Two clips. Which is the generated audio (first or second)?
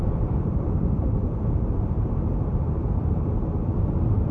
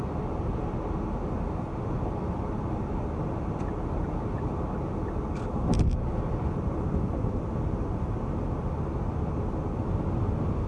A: first